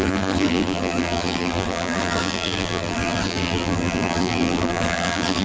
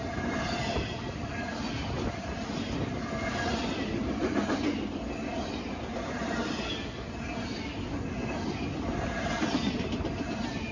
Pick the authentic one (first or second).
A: second